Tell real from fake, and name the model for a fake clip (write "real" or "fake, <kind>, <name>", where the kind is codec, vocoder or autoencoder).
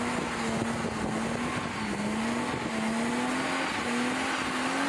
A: real